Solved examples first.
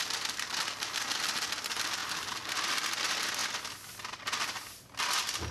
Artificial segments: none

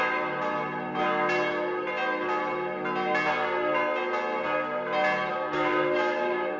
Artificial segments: 5.3-6.6 (codec, DAC)

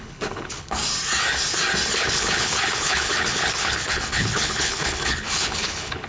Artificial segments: 0.0-0.8 (codec, HILCodec); 1.9-6.1

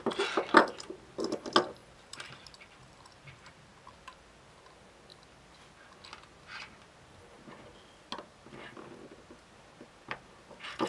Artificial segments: 1.8-4.3 (vocoder, BigVGAN v2)

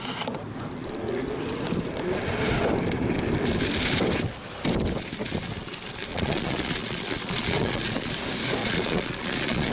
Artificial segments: 6.1-8.1 (vocoder, Vocos); 8.6-9.7

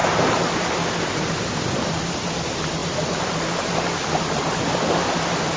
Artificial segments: none